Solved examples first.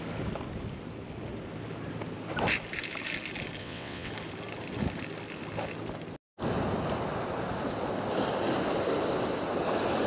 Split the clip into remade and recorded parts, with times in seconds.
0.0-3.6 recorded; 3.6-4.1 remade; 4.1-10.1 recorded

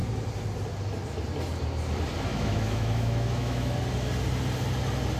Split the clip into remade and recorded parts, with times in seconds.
0.0-2.3 recorded; 2.3-3.7 remade; 3.7-5.2 recorded

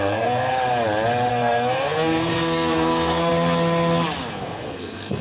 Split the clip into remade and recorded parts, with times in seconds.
0.0-0.5 remade; 0.5-1.3 recorded; 1.3-3.3 remade; 3.3-4.3 recorded; 4.3-5.2 remade

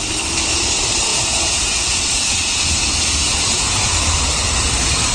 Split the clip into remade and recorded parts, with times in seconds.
0.0-1.1 recorded; 1.1-4.2 remade; 4.2-5.1 recorded

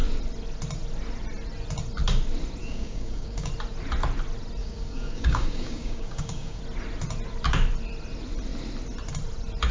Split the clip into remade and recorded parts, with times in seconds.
0.0-2.6 recorded; 2.6-3.5 remade; 3.5-4.6 recorded; 4.6-6.6 remade; 6.6-9.7 recorded

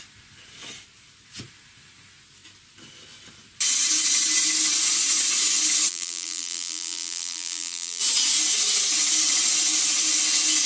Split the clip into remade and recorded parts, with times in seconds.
0.0-5.9 recorded; 5.9-8.0 remade; 8.0-10.7 recorded

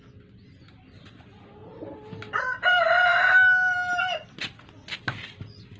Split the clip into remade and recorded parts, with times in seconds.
0.0-5.8 recorded